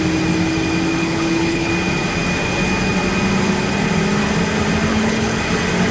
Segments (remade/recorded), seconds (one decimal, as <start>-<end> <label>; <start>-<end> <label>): 0.0-1.0 recorded; 1.0-1.7 remade; 1.7-4.9 recorded; 4.9-5.4 remade; 5.4-5.9 recorded